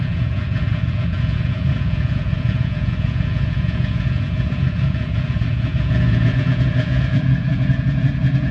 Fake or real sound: fake